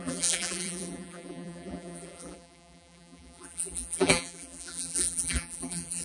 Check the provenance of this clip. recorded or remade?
remade